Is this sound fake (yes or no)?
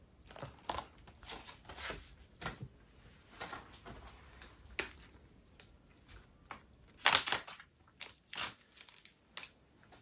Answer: no